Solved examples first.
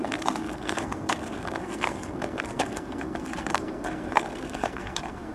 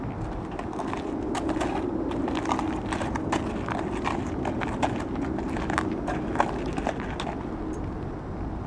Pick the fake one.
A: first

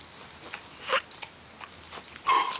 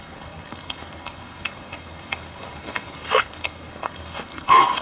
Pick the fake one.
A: second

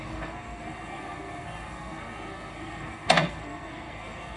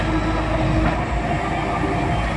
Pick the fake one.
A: first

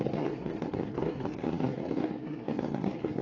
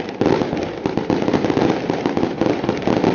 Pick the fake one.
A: first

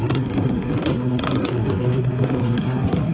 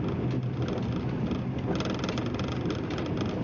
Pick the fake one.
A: first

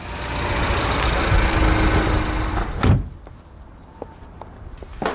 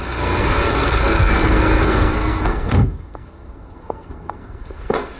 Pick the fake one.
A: second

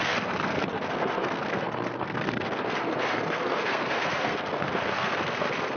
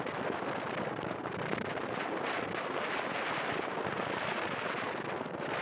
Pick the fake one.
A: first